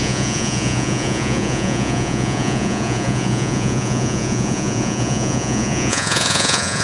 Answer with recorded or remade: remade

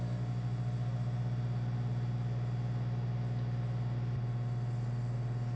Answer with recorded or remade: recorded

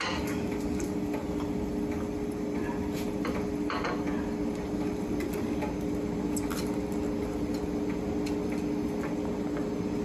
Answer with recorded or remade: recorded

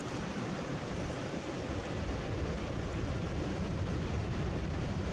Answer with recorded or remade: remade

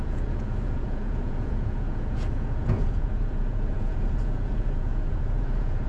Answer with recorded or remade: remade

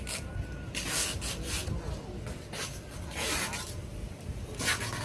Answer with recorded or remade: recorded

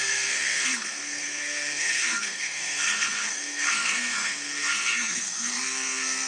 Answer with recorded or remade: remade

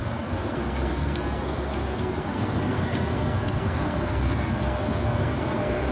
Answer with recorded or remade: remade